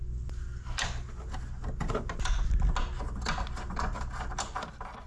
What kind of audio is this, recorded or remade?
recorded